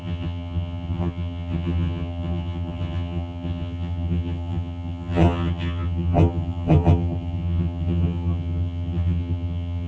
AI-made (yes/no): yes